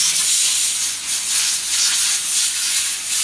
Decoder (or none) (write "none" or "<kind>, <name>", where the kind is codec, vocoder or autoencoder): vocoder, Vocos